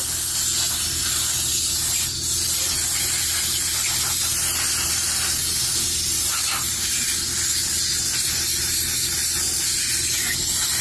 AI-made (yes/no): no